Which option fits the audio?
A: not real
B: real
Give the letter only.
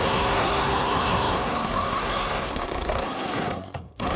A